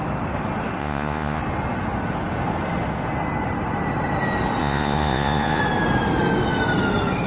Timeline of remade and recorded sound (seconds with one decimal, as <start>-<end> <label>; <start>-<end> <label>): 0.0-0.8 recorded; 0.8-1.4 remade; 1.4-4.6 recorded; 4.6-5.6 remade; 5.6-7.3 recorded